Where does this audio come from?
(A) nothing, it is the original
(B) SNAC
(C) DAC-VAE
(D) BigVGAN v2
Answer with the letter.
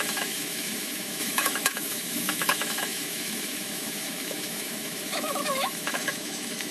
C